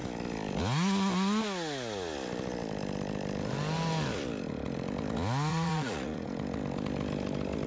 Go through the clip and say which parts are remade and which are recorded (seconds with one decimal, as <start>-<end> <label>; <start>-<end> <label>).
0.0-5.5 recorded; 5.5-6.3 remade; 6.3-7.7 recorded